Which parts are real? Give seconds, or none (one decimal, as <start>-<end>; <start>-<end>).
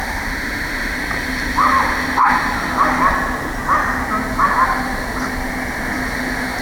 0.9-6.6